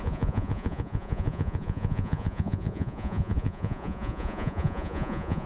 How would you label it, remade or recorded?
remade